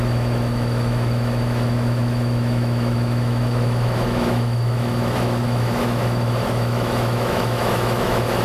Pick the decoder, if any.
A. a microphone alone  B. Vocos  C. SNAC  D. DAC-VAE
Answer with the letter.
D